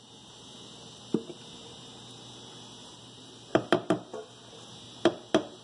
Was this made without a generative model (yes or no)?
yes